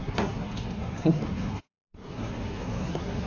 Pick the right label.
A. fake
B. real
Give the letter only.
A